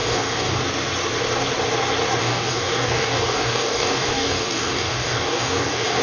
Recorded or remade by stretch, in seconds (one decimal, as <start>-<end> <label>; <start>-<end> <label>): 0.0-0.6 remade; 0.6-2.2 recorded; 2.2-6.0 remade